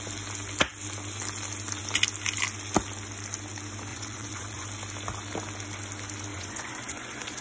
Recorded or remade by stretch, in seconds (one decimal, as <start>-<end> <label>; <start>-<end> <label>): 0.0-3.9 recorded; 3.9-4.7 remade; 4.7-6.3 recorded; 6.3-7.4 remade